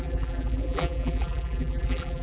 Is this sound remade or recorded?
remade